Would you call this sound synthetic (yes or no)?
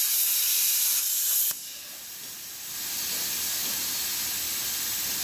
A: no